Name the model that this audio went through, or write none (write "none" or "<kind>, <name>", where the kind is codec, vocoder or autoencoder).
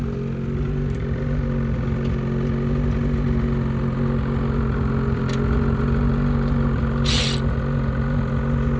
none